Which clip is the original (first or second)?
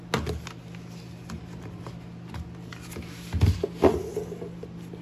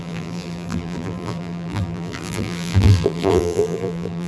first